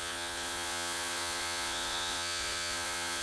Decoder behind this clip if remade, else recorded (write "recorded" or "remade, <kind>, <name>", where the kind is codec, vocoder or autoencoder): remade, vocoder, Vocos